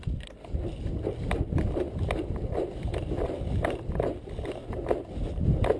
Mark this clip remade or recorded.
recorded